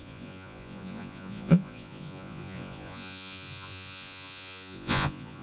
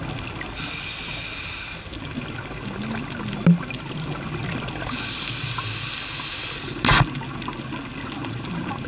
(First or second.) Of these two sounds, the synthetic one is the first